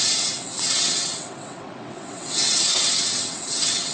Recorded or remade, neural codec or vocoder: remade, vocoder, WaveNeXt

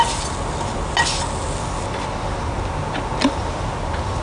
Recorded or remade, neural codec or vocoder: recorded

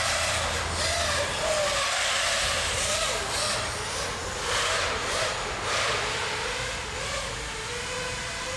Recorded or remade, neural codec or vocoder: recorded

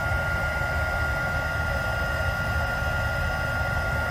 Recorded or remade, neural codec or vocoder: recorded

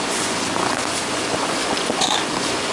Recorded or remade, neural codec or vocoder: remade, vocoder, Vocos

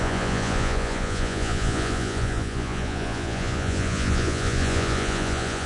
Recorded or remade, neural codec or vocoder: remade, vocoder, Vocos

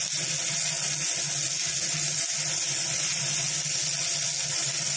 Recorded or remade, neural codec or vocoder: recorded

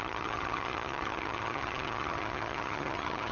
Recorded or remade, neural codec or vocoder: remade, vocoder, HiFi-GAN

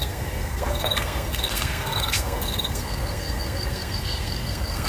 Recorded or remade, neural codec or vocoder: remade, codec, SNAC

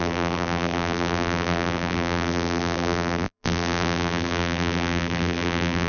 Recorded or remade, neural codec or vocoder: remade, vocoder, BigVGAN v2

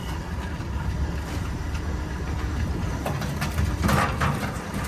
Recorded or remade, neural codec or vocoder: recorded